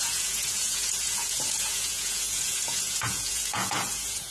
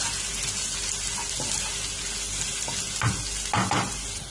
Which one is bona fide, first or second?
second